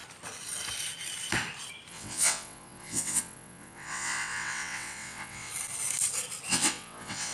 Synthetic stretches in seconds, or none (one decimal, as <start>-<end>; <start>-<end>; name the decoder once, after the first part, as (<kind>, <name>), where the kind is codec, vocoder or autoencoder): 1.9-5.5 (vocoder, WaveNeXt); 6.5-7.3